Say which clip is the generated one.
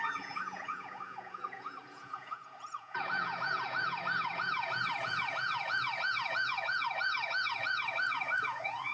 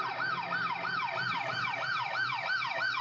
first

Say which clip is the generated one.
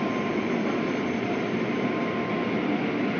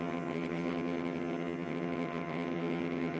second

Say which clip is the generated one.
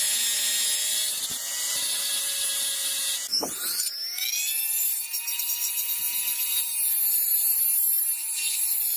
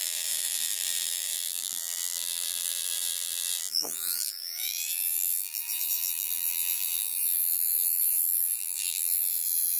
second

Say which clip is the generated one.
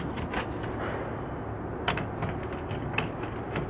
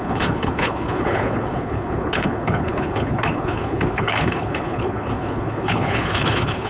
second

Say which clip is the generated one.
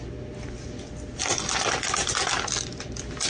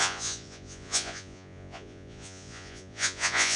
second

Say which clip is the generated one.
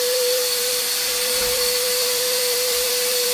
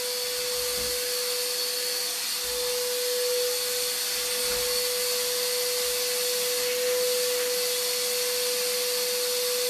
first